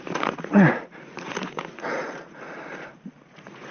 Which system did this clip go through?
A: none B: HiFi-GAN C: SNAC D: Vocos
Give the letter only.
D